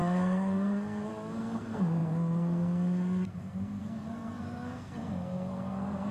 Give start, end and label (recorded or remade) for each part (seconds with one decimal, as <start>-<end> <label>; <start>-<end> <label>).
0.0-6.1 remade